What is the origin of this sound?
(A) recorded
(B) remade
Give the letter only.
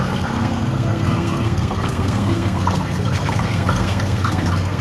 B